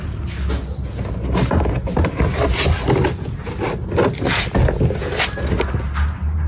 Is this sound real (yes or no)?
yes